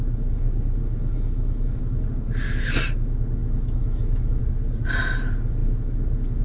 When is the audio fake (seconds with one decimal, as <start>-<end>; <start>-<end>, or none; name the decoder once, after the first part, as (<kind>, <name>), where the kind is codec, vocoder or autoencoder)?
0.8-1.8 (autoencoder, DAC-VAE); 3.4-4.4